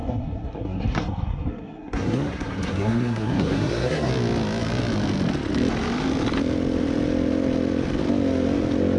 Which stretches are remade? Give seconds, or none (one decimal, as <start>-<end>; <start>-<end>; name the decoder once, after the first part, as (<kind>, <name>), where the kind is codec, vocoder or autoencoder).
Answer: 0.0-4.1 (codec, SNAC)